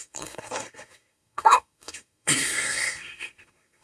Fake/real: fake